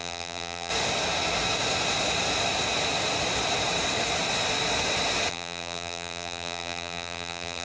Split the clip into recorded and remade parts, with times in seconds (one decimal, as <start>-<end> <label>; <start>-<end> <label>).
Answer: 0.0-0.7 remade; 0.7-5.3 recorded; 5.3-7.6 remade